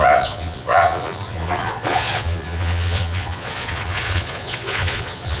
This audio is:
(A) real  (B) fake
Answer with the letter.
B